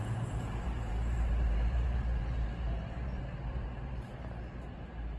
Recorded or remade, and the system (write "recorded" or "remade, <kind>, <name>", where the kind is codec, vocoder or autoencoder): remade, vocoder, BigVGAN v2